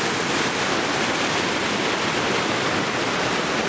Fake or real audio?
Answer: real